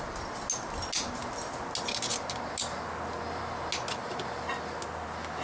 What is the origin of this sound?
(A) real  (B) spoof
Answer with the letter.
A